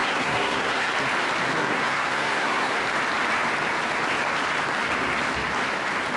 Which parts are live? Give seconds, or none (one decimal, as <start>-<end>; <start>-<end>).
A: 0.9-1.6; 2.8-6.2